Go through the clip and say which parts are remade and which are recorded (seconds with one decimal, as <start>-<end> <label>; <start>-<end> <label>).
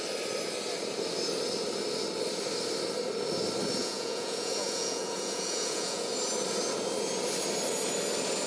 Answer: 0.0-3.8 recorded; 3.8-6.1 remade; 6.1-8.5 recorded